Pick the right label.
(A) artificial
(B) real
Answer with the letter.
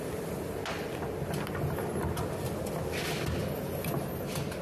B